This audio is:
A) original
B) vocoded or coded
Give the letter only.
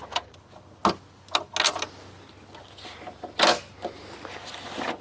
A